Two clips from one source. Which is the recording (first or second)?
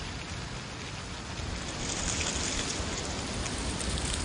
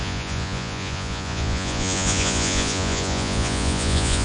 first